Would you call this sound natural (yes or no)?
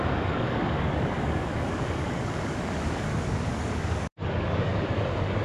no